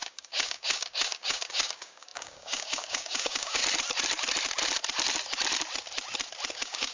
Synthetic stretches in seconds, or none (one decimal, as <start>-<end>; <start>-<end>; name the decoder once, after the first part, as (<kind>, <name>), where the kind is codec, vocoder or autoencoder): 0.0-3.6 (codec, DAC); 6.5-6.9